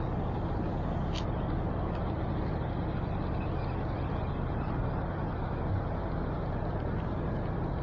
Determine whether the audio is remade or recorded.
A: recorded